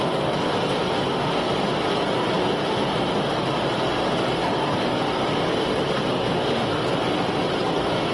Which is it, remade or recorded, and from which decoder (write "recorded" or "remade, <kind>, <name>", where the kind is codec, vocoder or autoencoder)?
recorded